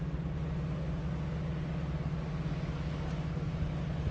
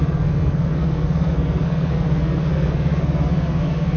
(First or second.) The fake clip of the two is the second